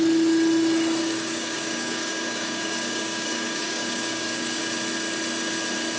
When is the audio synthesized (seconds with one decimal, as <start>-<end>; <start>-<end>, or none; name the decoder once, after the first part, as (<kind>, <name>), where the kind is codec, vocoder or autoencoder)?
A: 1.0-4.6 (codec, DAC)